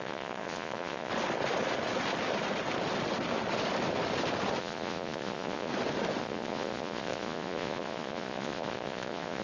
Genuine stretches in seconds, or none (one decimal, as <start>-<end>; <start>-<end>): 1.1-4.6; 5.7-6.2